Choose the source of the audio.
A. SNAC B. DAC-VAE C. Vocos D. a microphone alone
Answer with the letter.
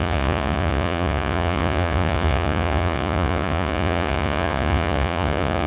C